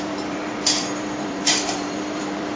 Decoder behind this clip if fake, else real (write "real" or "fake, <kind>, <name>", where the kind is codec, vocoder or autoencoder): fake, vocoder, BigVGAN v2